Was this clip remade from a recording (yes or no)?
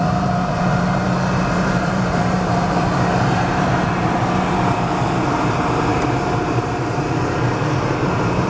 yes